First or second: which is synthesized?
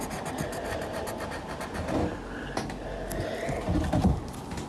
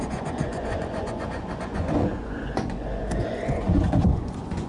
second